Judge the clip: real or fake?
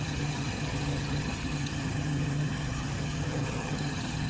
fake